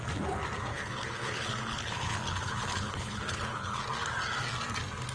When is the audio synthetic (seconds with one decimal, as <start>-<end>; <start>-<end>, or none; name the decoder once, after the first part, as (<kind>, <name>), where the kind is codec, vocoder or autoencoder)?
0.7-3.8 (codec, HILCodec)

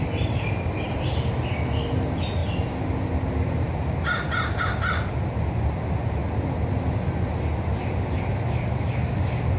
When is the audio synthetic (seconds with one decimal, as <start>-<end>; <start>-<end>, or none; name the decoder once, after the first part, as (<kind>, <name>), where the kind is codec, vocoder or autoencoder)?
none

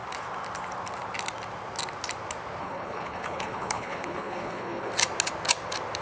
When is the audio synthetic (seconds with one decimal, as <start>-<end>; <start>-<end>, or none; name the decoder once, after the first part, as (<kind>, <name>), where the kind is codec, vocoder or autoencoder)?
2.6-4.9 (codec, HILCodec)

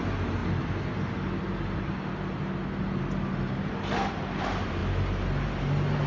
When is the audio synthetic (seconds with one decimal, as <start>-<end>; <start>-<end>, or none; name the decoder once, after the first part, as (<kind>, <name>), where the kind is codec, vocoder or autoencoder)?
none

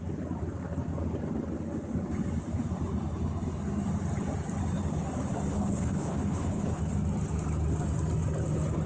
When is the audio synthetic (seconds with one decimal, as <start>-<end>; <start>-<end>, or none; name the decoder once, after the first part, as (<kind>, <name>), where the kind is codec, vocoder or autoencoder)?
5.5-6.8 (codec, HILCodec)

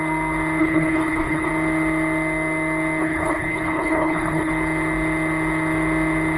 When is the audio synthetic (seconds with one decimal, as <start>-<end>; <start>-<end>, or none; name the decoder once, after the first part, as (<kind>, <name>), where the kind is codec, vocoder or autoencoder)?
0.6-1.5 (codec, HILCodec); 3.0-4.5

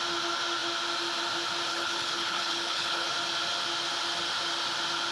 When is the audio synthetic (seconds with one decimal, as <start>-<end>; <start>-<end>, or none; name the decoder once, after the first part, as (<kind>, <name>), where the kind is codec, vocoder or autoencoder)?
1.7-3.1 (codec, HILCodec)